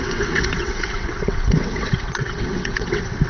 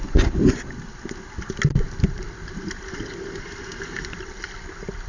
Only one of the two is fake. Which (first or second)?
first